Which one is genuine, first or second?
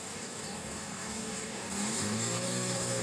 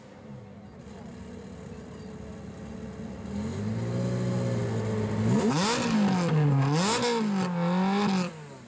second